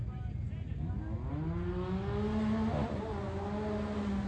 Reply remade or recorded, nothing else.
recorded